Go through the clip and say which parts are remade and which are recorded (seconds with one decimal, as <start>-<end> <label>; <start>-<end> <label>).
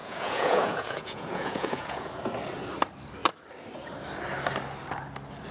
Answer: 0.0-2.1 remade; 2.1-5.5 recorded